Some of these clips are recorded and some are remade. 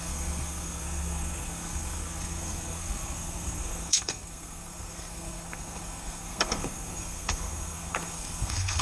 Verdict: remade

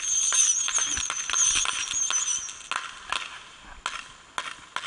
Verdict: recorded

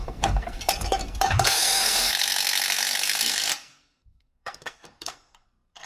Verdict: remade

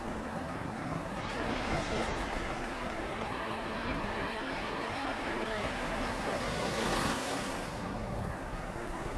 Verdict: remade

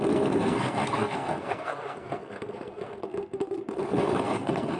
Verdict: remade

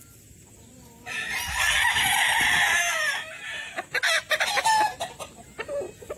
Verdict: recorded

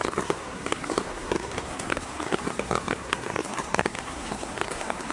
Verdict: remade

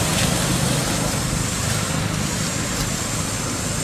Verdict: recorded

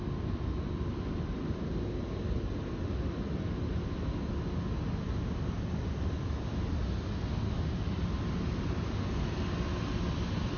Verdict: recorded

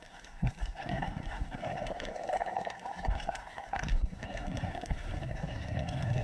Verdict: remade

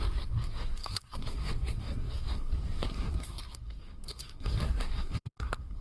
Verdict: remade